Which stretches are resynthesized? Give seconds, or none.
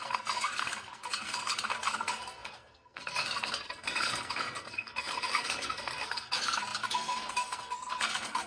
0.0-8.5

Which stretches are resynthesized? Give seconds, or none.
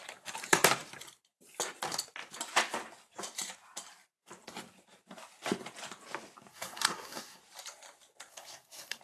6.5-7.4; 8.3-9.0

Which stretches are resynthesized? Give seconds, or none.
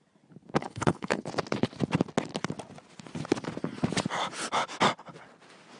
0.6-1.2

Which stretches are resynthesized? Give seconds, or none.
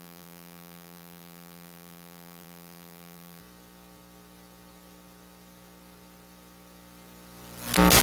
0.0-3.4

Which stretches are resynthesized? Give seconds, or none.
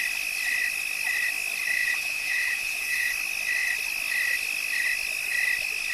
1.8-3.1